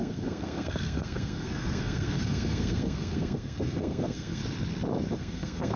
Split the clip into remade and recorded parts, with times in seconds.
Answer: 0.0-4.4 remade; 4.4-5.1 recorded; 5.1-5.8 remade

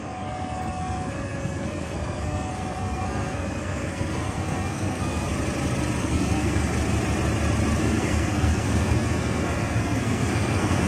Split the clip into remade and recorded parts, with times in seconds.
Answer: 0.0-5.3 remade; 5.3-6.0 recorded; 6.0-6.7 remade; 6.7-7.8 recorded; 7.8-10.9 remade

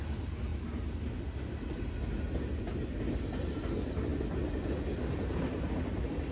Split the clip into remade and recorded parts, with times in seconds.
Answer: 0.0-6.3 recorded

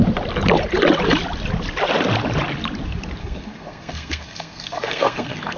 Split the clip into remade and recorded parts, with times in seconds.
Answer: 0.0-3.2 recorded; 3.2-5.6 remade

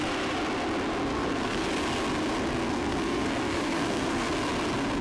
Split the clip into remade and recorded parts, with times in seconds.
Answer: 0.0-1.1 recorded; 1.1-1.7 remade; 1.7-2.5 recorded; 2.5-4.3 remade; 4.3-5.0 recorded

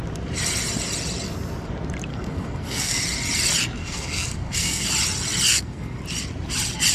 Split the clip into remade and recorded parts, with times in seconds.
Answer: 0.0-2.1 recorded; 2.1-3.0 remade; 3.0-3.8 recorded; 3.8-4.9 remade; 4.9-5.5 recorded; 5.5-6.0 remade; 6.0-6.9 recorded

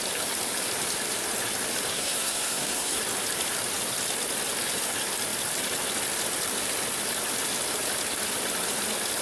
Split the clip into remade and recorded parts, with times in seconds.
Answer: 0.0-1.9 recorded; 1.9-3.0 remade; 3.0-9.2 recorded